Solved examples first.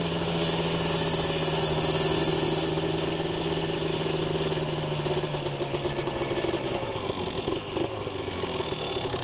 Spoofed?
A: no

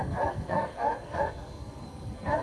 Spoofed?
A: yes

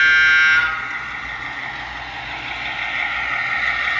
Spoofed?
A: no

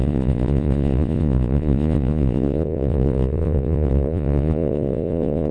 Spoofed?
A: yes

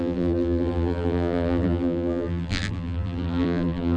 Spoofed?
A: yes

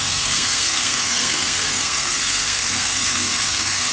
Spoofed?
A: yes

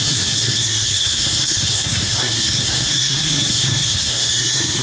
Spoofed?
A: yes